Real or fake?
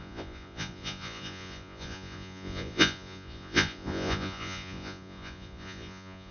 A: fake